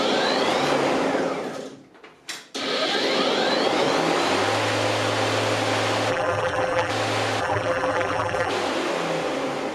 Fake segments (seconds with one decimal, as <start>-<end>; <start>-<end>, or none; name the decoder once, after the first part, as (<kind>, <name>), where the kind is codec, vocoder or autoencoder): 6.1-6.9 (vocoder, BigVGAN v2); 7.4-8.5